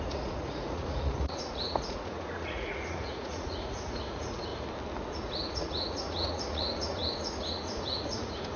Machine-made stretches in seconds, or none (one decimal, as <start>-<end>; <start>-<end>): 0.0-4.5; 5.0-8.6